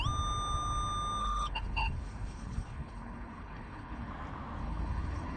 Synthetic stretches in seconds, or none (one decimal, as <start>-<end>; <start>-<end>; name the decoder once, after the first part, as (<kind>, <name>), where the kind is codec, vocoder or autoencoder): 1.2-4.1 (codec, HILCodec); 4.6-5.4